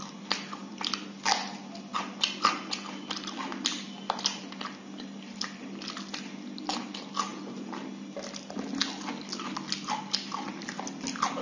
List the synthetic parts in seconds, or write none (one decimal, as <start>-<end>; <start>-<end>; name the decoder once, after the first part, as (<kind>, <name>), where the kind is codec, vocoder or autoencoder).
none

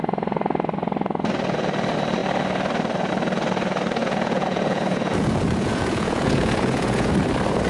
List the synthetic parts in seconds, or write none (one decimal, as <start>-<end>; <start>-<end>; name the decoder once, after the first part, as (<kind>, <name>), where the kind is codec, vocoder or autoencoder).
4.0-7.1 (vocoder, Vocos)

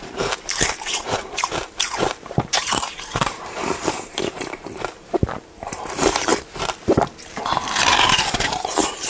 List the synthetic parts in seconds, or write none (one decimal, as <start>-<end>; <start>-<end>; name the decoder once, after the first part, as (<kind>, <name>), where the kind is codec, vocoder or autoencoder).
0.0-6.3 (vocoder, BigVGAN v2); 7.3-9.1

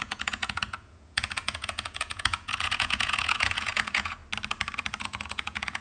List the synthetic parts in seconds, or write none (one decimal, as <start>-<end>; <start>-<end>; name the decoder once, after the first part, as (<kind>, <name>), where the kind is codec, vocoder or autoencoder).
0.0-4.2 (vocoder, Vocos); 5.0-5.8

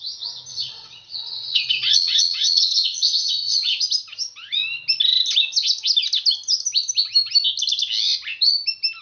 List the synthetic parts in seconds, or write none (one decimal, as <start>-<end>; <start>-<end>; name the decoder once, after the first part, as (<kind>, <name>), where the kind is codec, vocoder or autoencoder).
0.5-3.8 (vocoder, WaveNeXt)

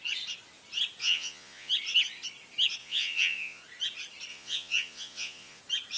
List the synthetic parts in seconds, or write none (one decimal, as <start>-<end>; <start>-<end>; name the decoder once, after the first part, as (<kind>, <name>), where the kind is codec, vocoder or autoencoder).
1.0-1.7 (vocoder, Vocos); 2.8-3.6; 4.3-5.6

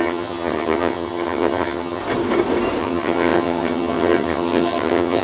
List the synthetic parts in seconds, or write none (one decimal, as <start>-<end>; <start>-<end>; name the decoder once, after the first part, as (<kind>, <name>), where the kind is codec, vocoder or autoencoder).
0.0-2.0 (vocoder, HiFi-GAN); 2.8-5.2